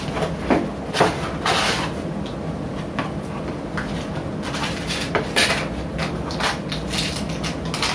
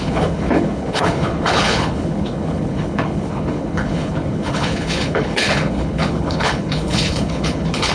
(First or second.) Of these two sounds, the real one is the first